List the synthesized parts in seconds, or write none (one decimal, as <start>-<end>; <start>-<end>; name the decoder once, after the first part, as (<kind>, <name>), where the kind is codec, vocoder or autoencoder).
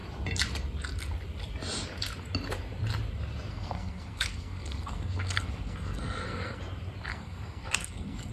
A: 3.5-6.6 (codec, SNAC); 7.1-8.3